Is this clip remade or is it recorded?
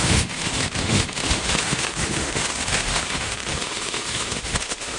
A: remade